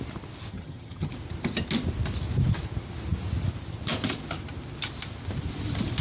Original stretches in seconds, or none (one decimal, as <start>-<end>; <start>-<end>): 0.0-0.5; 1.1-6.0

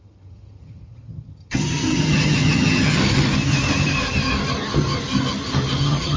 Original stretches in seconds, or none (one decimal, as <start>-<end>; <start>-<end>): 3.0-5.8

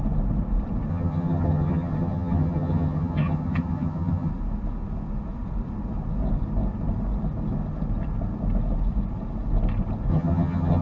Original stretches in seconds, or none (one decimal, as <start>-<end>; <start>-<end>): 0.0-0.9; 4.3-10.1

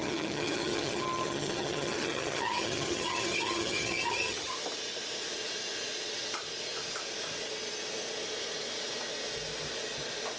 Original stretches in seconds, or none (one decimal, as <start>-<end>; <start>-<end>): 4.5-10.4

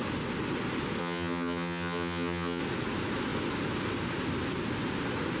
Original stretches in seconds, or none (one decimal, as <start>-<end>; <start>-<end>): 0.0-1.0; 2.6-5.4